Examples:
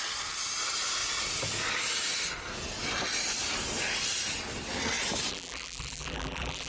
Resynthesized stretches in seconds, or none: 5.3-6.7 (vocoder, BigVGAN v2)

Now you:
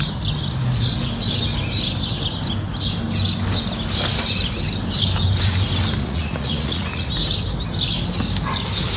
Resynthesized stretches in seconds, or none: 6.0-7.1 (vocoder, Vocos)

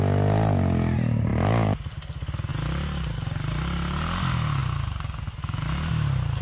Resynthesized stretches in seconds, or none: none

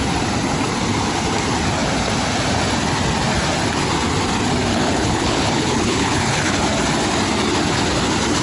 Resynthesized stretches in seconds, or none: 4.7-6.6 (codec, HILCodec)

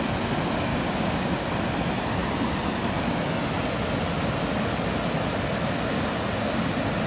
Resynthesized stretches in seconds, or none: 0.7-1.5 (codec, DAC)